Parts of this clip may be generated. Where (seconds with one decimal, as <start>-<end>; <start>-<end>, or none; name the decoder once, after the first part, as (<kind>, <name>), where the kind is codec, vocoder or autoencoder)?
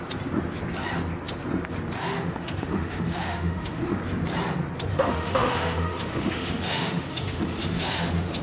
2.0-4.0 (autoencoder, DAC-VAE); 4.9-8.4